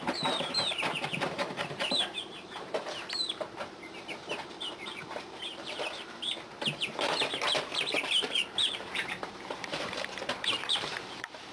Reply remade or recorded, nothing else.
remade